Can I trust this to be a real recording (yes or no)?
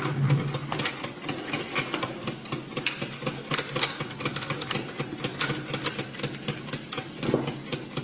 yes